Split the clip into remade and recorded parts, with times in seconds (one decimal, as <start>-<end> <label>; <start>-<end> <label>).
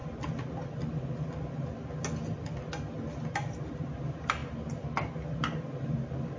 0.0-6.4 recorded